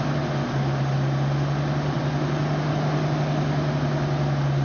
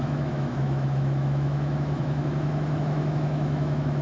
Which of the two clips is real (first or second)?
first